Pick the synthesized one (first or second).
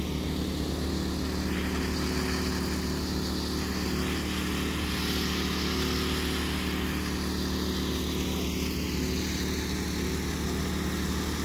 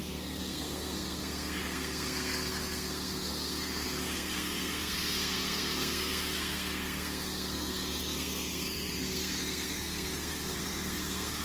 second